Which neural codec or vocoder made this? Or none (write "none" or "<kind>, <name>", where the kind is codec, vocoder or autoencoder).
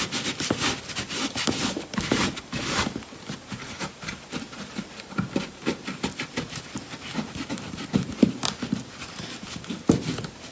vocoder, BigVGAN v2